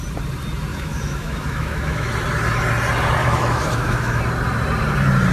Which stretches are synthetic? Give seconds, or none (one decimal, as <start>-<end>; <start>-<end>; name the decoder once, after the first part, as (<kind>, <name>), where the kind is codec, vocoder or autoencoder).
0.7-2.1 (autoencoder, DAC-VAE); 3.2-4.2